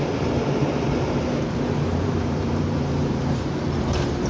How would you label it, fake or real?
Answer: fake